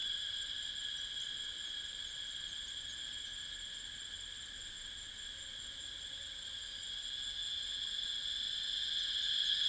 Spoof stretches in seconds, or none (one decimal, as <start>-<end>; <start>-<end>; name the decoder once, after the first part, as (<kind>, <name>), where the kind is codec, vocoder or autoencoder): 0.0-0.7 (vocoder, BigVGAN v2)